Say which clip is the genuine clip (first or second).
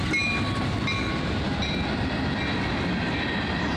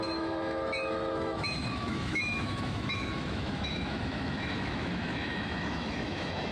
first